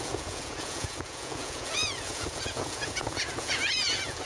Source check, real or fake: fake